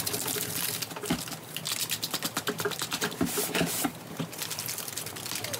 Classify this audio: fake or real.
real